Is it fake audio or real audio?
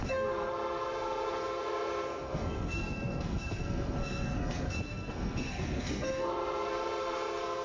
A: fake